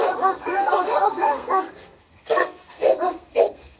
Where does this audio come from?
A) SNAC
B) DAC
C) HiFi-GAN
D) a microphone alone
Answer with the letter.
A